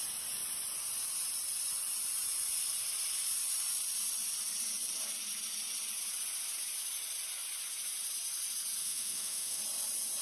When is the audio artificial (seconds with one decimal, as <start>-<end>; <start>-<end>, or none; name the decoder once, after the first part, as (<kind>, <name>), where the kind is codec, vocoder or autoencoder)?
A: 8.8-9.6 (autoencoder, DAC-VAE)